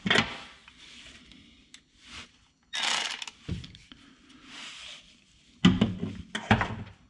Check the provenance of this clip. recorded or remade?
recorded